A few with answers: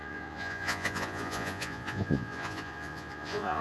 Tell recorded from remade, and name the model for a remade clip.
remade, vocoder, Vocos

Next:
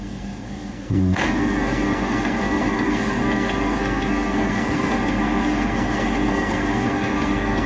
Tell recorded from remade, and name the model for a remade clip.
remade, codec, SNAC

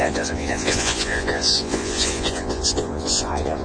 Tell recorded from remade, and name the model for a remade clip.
remade, vocoder, Vocos